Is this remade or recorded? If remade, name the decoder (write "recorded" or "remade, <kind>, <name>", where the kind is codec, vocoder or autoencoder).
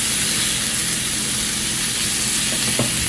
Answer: recorded